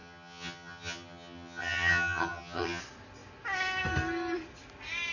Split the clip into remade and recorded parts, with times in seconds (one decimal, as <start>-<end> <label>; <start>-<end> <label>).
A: 0.0-2.8 remade; 2.8-5.1 recorded